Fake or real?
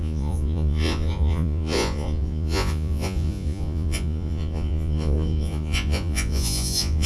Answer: fake